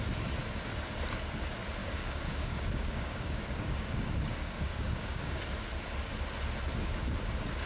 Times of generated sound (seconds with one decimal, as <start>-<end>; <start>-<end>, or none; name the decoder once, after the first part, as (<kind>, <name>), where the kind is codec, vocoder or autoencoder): 1.8-5.4 (codec, DAC)